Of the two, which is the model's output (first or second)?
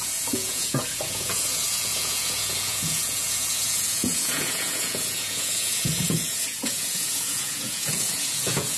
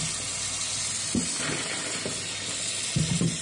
first